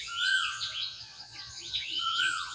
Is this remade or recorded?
remade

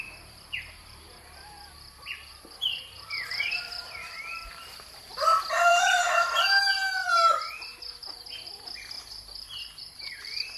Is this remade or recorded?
remade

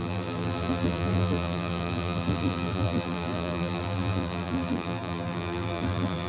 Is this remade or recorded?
remade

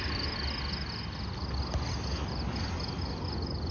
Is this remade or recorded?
recorded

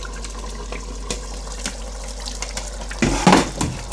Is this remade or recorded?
recorded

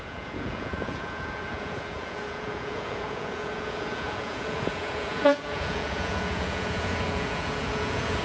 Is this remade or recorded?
remade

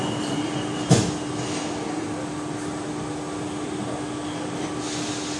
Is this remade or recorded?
recorded